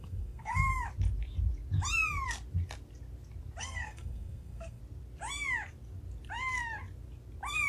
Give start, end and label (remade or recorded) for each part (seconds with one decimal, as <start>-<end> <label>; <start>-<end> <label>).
0.0-0.7 remade; 0.7-3.6 recorded; 3.6-4.8 remade; 4.8-7.7 recorded